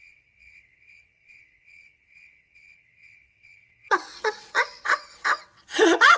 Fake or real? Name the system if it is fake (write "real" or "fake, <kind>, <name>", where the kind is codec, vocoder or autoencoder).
fake, vocoder, WaveNeXt